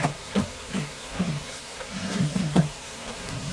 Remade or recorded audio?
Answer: remade